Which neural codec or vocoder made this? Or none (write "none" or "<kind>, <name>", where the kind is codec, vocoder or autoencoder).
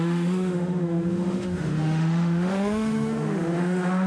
autoencoder, DAC-VAE